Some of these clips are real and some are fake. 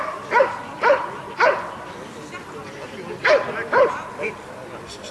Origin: real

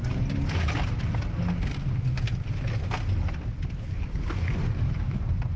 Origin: real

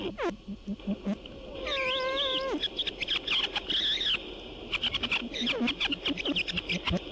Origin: real